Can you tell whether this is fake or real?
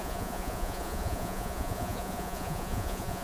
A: fake